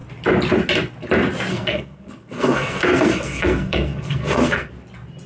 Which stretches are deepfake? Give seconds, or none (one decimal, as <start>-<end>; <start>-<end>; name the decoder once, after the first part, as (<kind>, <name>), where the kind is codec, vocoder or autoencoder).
1.5-4.7 (codec, SNAC)